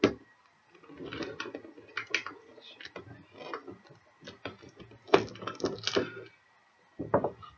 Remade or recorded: recorded